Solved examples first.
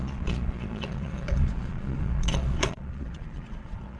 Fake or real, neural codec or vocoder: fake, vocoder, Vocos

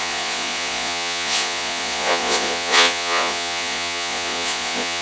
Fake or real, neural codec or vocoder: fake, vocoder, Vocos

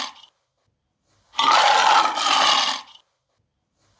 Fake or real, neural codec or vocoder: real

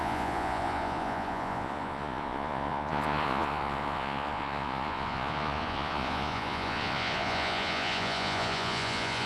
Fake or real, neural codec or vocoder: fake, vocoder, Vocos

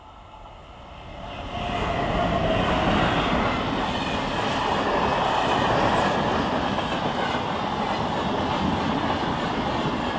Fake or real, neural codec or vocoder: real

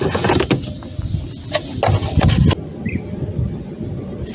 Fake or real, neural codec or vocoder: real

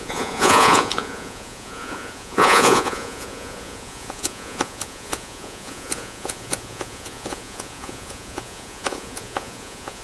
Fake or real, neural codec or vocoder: fake, vocoder, Vocos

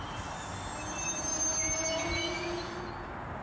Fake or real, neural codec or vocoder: real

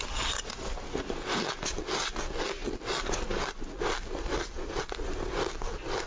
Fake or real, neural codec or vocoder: real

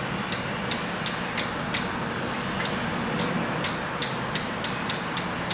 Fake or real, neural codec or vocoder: real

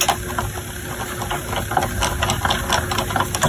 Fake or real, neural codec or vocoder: real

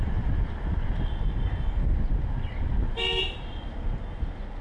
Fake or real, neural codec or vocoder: real